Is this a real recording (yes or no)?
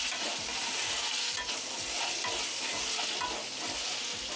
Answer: yes